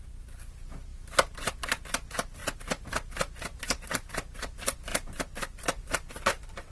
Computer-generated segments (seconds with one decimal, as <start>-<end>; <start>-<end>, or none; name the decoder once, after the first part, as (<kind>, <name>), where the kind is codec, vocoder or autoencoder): 4.9-6.1 (vocoder, BigVGAN v2)